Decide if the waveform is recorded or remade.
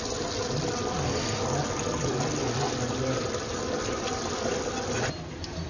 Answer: recorded